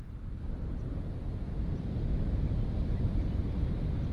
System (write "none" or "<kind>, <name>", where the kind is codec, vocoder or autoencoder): none